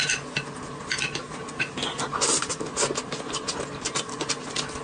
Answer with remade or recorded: recorded